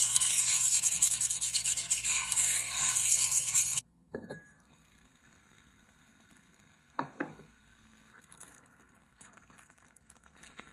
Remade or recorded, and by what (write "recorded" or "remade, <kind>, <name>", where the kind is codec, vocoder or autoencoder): remade, codec, SNAC